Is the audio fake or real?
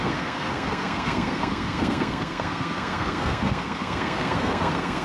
fake